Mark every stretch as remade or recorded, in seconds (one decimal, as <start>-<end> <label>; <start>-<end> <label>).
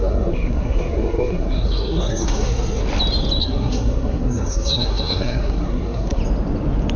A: 0.0-2.8 remade; 2.8-3.4 recorded; 3.4-6.2 remade; 6.2-7.0 recorded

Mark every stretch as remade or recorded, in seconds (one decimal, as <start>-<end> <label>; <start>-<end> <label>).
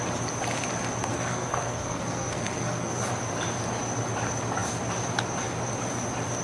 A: 0.0-1.1 recorded; 1.1-3.1 remade; 3.1-6.4 recorded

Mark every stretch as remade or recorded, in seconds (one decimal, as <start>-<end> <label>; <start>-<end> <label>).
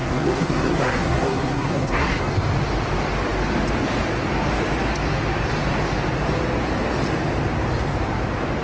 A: 0.0-2.2 remade; 2.2-8.6 recorded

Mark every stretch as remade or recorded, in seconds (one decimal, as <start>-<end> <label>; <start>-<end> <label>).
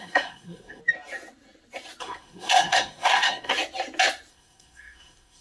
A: 0.0-0.8 remade; 0.8-2.0 recorded; 2.0-3.5 remade; 3.5-4.3 recorded; 4.3-5.4 remade